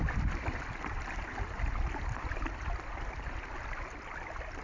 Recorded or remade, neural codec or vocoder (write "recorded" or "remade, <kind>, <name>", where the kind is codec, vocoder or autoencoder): recorded